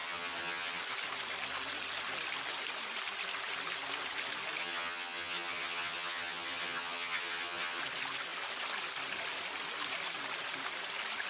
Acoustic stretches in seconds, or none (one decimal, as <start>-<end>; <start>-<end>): 0.8-4.6; 7.8-11.3